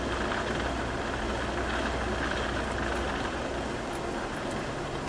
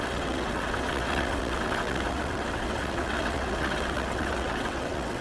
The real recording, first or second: first